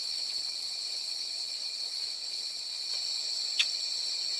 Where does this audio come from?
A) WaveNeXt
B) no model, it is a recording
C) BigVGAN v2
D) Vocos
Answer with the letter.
A